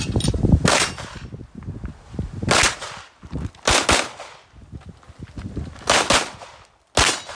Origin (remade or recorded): recorded